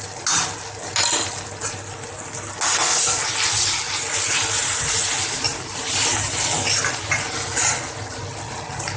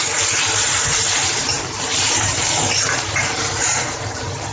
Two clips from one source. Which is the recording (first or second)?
first